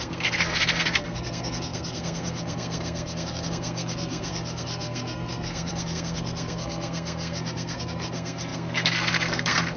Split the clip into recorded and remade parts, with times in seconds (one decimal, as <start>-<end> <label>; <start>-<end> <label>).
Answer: 0.0-9.8 remade